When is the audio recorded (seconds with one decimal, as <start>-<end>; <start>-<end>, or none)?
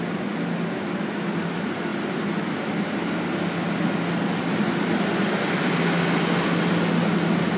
0.0-7.6